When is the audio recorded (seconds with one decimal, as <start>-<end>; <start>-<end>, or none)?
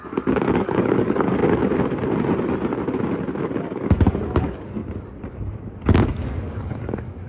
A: 1.4-3.6; 4.8-5.3